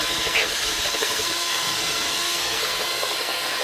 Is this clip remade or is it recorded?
remade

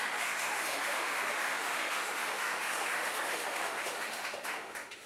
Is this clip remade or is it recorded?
remade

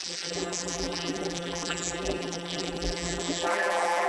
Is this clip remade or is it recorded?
remade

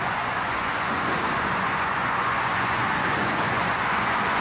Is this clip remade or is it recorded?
remade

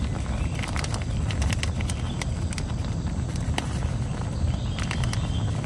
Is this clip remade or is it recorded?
remade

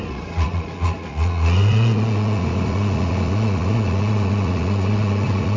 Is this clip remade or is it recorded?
remade